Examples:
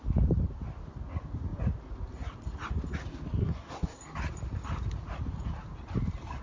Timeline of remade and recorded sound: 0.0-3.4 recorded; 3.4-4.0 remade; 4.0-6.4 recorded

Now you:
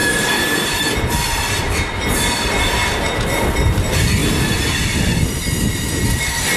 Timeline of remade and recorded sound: 0.0-6.6 recorded

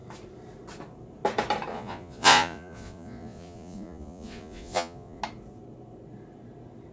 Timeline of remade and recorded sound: 0.0-1.7 recorded; 1.7-5.2 remade; 5.2-6.9 recorded

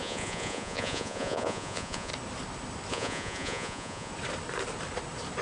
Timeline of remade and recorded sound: 0.0-2.1 remade; 2.1-2.9 recorded; 2.9-4.1 remade; 4.1-5.4 recorded

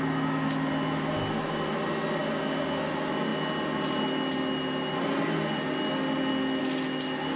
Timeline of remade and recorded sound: 0.0-7.4 recorded

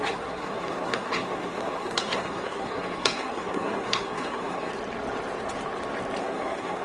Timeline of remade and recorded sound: 0.0-4.7 remade; 4.7-6.2 recorded; 6.2-6.8 remade

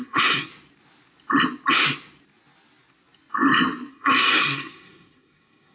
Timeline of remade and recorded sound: 0.0-0.5 remade; 0.5-3.9 recorded; 3.9-5.7 remade